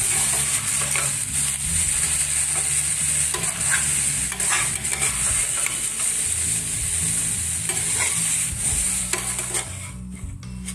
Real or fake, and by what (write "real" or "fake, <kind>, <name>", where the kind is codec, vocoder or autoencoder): real